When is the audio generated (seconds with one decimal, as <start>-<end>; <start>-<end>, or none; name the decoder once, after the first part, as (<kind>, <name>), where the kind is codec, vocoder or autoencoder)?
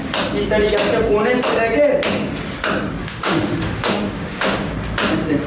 3.0-4.7 (autoencoder, DAC-VAE)